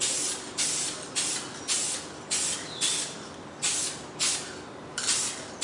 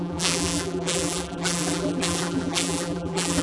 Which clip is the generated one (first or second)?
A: second